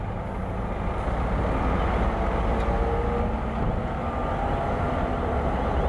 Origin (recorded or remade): recorded